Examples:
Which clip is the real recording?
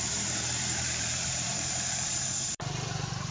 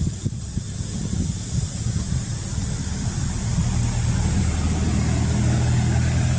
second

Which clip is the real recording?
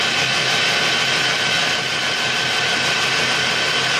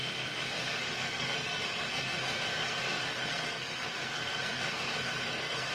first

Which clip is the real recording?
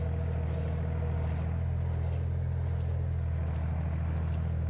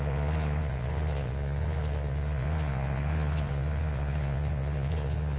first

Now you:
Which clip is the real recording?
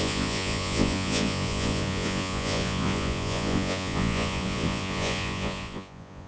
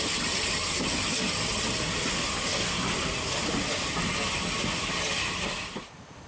second